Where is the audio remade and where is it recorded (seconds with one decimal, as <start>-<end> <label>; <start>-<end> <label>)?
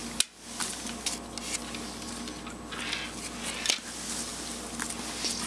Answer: 0.0-5.5 recorded